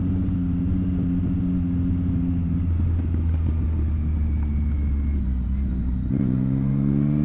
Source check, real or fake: real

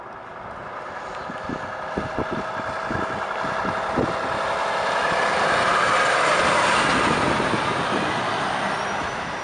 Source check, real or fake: real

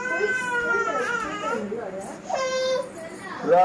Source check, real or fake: real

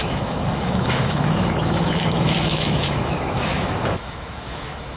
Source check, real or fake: fake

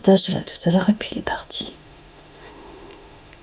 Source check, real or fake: fake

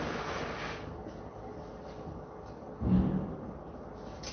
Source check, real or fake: real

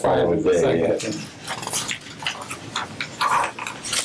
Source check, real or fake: real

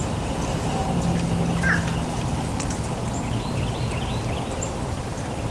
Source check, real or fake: real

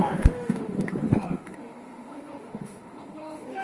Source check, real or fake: fake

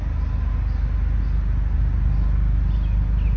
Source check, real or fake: real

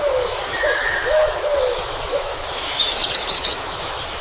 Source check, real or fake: fake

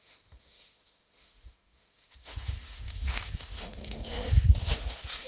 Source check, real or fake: fake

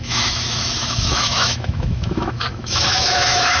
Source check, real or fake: fake